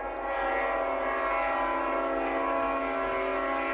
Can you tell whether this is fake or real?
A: real